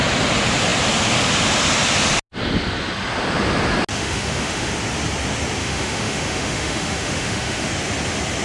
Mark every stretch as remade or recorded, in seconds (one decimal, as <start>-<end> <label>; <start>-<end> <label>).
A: 0.0-3.9 recorded; 3.9-4.7 remade; 4.7-5.6 recorded; 5.6-7.7 remade; 7.7-8.4 recorded

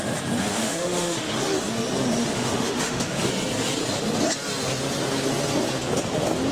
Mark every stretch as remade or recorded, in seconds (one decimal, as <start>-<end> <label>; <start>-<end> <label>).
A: 0.0-0.5 recorded; 0.5-1.4 remade; 1.4-2.2 recorded; 2.2-3.3 remade; 3.3-6.5 recorded

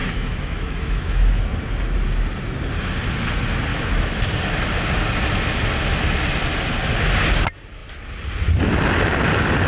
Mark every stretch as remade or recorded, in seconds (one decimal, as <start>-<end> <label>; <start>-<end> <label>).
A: 0.0-1.4 remade; 1.4-3.7 recorded; 3.7-4.2 remade; 4.2-9.7 recorded